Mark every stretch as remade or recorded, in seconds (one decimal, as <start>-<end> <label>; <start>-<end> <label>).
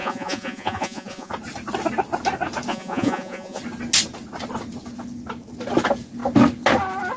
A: 0.0-1.3 remade; 1.3-2.7 recorded; 2.7-3.6 remade; 3.6-7.2 recorded